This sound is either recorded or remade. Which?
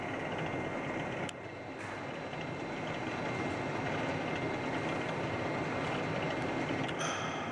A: recorded